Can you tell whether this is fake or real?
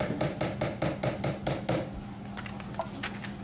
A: real